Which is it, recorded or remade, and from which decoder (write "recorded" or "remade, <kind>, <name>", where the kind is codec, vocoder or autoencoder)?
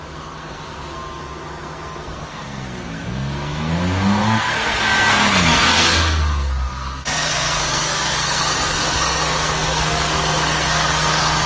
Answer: remade, codec, SNAC